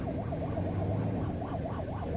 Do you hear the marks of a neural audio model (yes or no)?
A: no